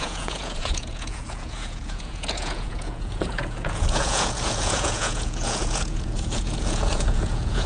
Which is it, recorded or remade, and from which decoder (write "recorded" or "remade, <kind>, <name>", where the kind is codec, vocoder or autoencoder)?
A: remade, vocoder, Vocos